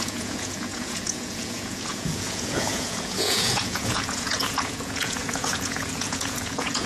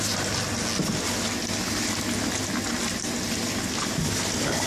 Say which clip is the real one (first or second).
second